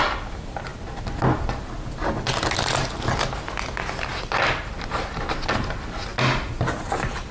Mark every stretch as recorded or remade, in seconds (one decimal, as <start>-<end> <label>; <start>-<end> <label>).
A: 0.0-7.3 recorded

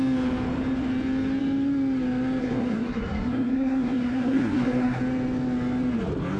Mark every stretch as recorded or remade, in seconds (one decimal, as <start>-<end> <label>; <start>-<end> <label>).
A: 0.0-2.4 recorded; 2.4-5.0 remade; 5.0-6.4 recorded